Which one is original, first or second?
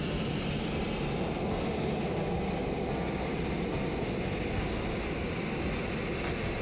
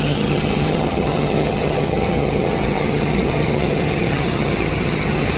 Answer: first